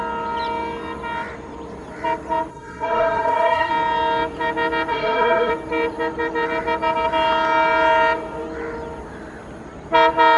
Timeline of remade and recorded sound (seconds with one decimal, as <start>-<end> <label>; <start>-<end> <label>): 0.0-2.5 recorded; 2.5-3.7 remade; 3.7-4.9 recorded; 4.9-5.5 remade; 5.5-10.4 recorded